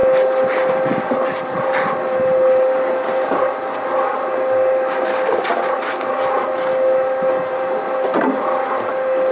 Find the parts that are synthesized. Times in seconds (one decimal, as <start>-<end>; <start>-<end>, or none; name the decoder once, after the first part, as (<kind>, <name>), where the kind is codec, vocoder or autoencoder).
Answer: none